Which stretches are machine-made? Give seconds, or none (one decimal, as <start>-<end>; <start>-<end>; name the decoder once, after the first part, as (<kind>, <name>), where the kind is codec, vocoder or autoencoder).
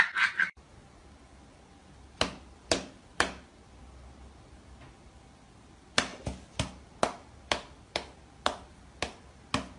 none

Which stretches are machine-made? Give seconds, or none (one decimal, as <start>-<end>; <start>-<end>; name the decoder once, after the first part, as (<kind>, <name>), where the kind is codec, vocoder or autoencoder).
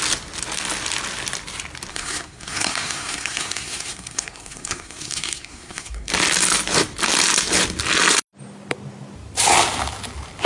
1.9-6.1 (codec, SNAC)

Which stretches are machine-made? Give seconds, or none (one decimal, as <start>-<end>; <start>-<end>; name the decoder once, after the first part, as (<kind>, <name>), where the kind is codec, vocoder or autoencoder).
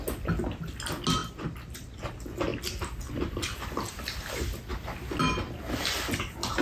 none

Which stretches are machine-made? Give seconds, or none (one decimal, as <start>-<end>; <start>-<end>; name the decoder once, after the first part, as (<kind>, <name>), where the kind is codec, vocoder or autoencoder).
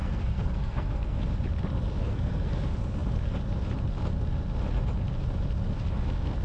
0.0-1.2 (codec, SNAC); 2.0-2.5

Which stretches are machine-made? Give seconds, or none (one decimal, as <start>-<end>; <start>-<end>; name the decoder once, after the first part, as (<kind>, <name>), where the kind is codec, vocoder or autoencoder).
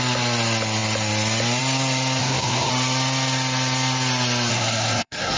2.2-2.7 (codec, SNAC); 4.5-5.4